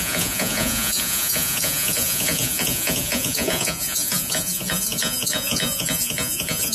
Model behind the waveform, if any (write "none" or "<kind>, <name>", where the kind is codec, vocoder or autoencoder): vocoder, Vocos